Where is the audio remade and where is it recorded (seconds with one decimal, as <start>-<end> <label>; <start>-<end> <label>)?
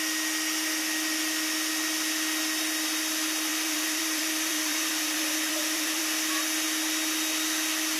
0.0-3.5 recorded; 3.5-6.0 remade; 6.0-8.0 recorded